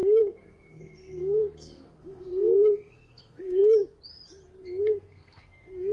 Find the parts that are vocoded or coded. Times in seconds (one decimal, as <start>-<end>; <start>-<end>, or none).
0.0-3.6; 4.8-5.9